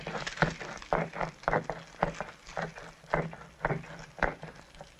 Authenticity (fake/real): real